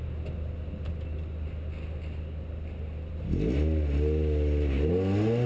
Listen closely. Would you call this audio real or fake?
real